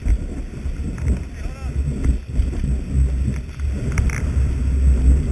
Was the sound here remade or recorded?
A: recorded